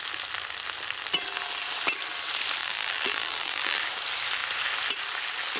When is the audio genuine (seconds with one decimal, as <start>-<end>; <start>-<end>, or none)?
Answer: 0.0-2.6; 3.8-5.6